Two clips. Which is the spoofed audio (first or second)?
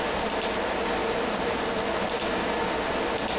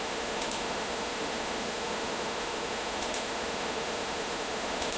second